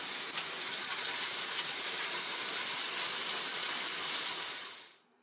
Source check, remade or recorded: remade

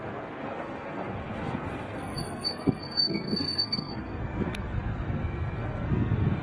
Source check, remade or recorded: remade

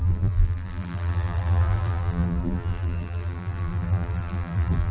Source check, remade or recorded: remade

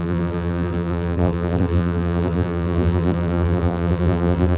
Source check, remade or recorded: remade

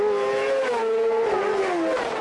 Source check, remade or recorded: recorded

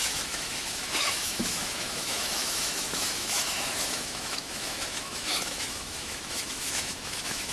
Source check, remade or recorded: remade